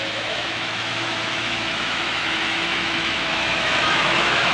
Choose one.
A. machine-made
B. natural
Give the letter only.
A